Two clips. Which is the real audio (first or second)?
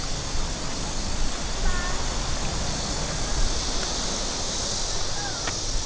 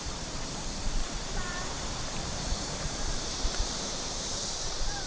first